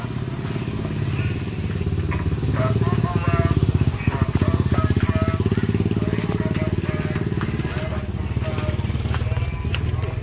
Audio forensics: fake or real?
real